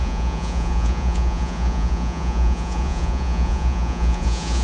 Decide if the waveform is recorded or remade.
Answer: remade